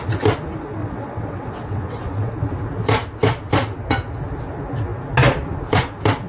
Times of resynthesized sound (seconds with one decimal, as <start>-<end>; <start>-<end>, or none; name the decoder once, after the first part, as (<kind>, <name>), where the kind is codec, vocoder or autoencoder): 0.8-2.3 (vocoder, WaveNeXt)